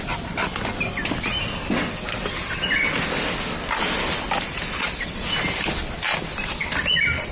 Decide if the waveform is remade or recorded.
recorded